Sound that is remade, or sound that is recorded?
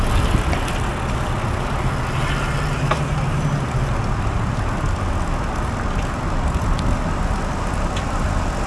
recorded